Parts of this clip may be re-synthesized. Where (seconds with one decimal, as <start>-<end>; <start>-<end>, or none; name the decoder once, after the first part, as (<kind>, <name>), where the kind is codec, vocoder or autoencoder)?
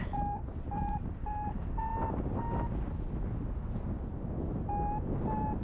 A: 0.0-1.9 (vocoder, BigVGAN v2)